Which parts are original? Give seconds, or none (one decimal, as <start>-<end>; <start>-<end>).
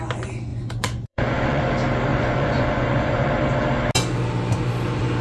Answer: 0.0-0.5; 1.6-2.1; 3.3-5.2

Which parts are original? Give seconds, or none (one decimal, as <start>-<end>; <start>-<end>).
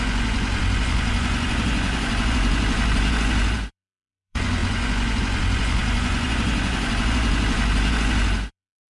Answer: none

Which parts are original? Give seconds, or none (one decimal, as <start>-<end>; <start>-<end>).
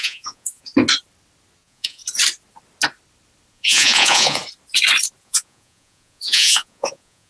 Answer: 0.7-1.6; 2.0-3.5; 4.4-5.2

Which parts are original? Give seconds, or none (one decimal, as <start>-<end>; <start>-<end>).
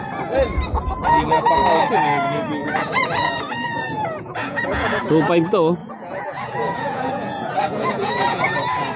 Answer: 0.0-2.6; 5.0-5.8; 8.6-9.0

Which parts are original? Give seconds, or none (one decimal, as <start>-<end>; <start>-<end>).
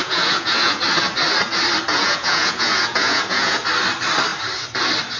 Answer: 0.8-1.9; 3.6-5.2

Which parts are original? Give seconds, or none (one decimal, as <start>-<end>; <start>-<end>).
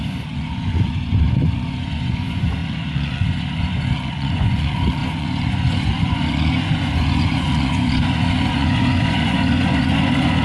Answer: none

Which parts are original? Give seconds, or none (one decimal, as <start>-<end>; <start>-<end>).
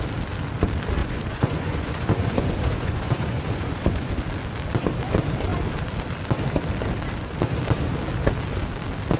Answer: 0.0-1.0; 4.1-9.2